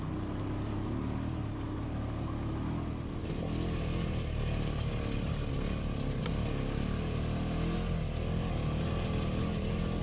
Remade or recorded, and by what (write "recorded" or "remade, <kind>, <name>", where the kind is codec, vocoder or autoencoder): recorded